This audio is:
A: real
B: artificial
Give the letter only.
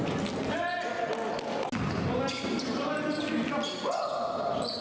A